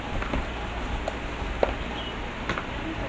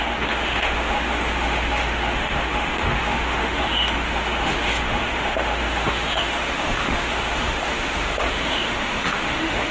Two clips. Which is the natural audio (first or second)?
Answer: first